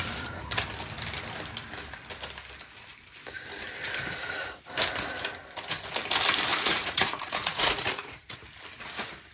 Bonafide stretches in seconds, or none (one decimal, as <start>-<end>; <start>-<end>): 0.0-6.5; 8.4-9.3